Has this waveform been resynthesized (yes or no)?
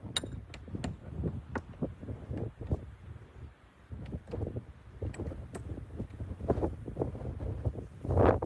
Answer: no